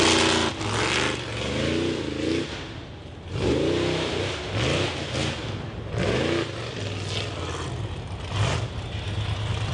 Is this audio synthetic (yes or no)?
no